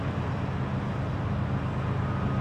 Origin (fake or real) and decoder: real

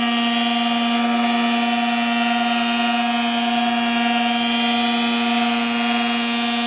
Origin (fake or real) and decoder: real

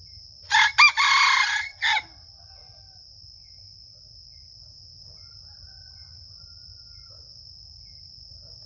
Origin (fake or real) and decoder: fake, vocoder, BigVGAN v2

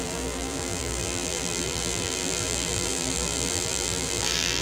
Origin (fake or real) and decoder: fake, vocoder, BigVGAN v2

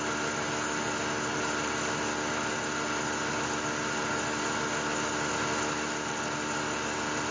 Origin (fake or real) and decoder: real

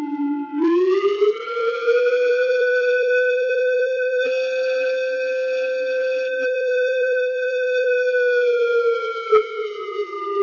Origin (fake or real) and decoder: fake, vocoder, BigVGAN v2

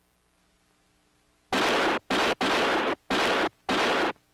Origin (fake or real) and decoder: real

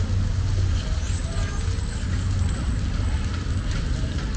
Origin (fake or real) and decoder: real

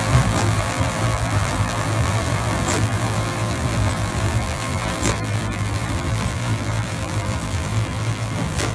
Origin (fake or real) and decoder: fake, vocoder, BigVGAN v2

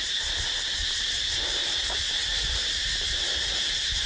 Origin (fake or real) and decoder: fake, vocoder, BigVGAN v2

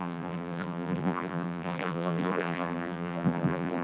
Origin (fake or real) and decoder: fake, vocoder, BigVGAN v2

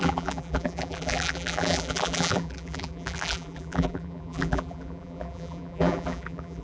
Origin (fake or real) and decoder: fake, vocoder, BigVGAN v2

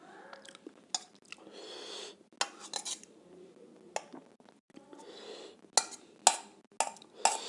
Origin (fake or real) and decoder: real